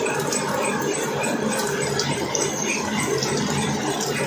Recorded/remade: recorded